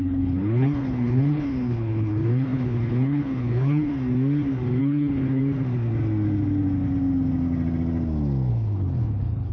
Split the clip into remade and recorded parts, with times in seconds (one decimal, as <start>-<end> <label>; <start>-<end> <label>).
0.0-3.9 remade; 3.9-4.8 recorded; 4.8-5.4 remade; 5.4-8.5 recorded; 8.5-9.5 remade